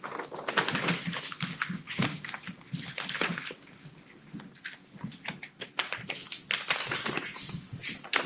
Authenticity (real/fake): real